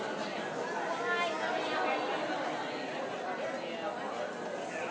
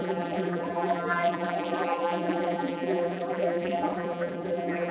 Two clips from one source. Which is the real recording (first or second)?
first